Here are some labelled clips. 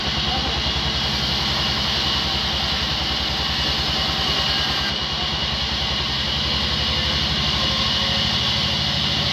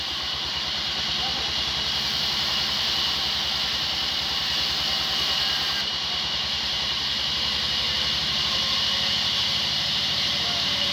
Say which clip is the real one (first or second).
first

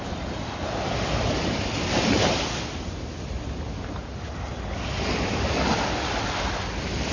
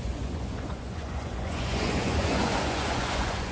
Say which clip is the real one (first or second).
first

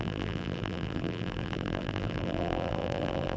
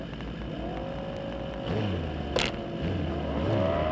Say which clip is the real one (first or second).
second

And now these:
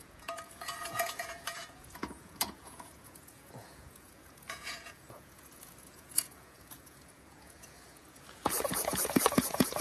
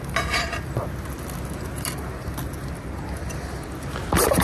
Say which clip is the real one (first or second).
second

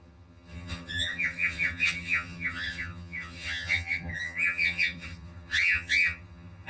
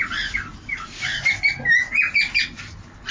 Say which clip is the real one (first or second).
second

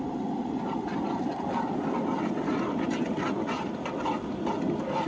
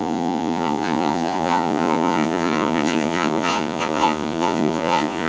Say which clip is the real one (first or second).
first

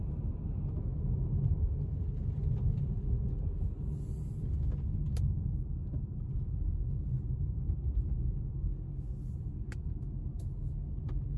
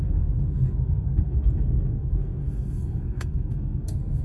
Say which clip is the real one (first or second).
first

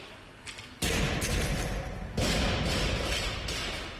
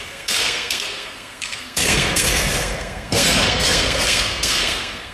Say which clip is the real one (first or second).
first